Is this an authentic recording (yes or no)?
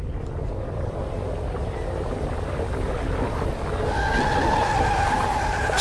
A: yes